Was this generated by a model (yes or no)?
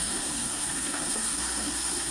yes